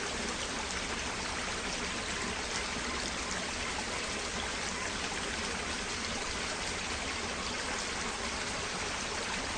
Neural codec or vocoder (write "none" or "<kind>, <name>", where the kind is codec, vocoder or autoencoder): none